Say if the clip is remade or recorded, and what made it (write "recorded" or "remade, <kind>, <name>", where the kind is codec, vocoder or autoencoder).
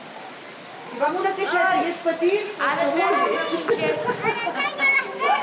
recorded